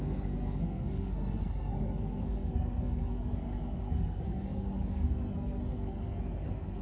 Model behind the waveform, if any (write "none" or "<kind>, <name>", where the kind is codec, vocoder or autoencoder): codec, SNAC